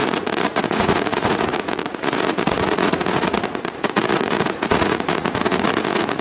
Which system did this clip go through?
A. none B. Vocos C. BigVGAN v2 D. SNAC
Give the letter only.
B